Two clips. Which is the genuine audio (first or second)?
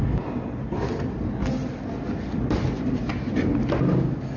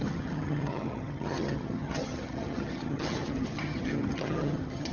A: first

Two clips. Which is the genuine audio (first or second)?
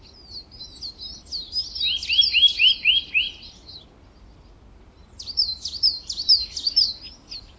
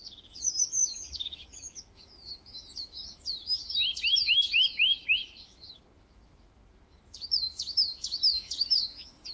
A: first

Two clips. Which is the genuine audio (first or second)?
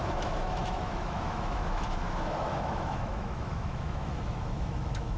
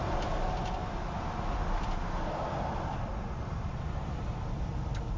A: second